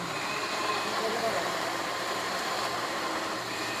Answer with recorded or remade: remade